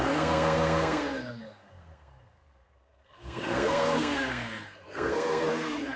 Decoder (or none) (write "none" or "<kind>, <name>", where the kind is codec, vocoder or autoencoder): codec, SNAC